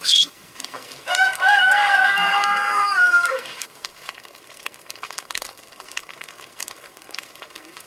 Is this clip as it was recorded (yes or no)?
no